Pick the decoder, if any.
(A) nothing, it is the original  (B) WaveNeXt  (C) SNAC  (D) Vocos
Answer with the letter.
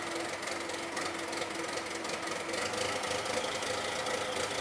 A